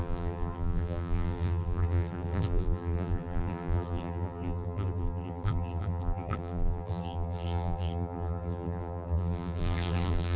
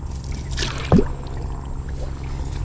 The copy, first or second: first